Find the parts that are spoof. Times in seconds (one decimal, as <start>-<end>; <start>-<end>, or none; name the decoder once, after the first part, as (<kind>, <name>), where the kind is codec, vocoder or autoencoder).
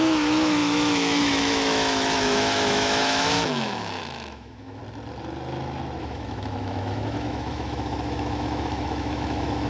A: 0.0-4.8 (autoencoder, DAC-VAE); 6.0-9.7